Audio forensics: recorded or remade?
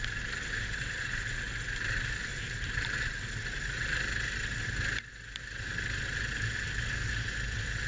recorded